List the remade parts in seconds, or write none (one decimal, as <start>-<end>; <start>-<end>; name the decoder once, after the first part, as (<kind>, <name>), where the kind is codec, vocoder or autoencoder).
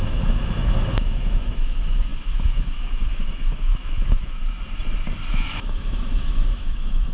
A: 0.0-4.4 (autoencoder, DAC-VAE); 5.3-7.1